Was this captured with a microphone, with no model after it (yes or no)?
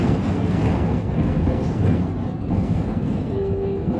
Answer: no